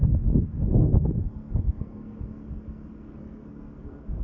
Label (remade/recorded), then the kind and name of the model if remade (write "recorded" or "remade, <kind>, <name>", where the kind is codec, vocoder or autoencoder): remade, codec, SNAC